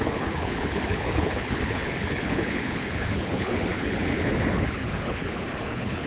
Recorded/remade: remade